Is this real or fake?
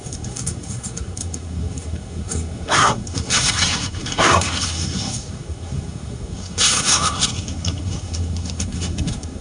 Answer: fake